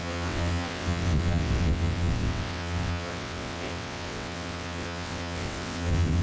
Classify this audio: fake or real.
fake